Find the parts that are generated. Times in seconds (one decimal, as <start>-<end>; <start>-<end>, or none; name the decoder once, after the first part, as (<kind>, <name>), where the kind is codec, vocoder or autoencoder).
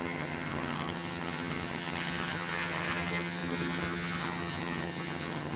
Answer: 0.0-5.6 (vocoder, HiFi-GAN)